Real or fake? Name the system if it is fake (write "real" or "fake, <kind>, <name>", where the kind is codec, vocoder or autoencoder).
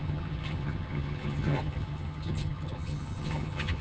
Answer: fake, vocoder, HiFi-GAN